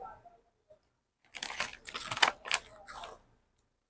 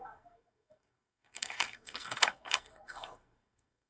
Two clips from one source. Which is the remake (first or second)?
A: second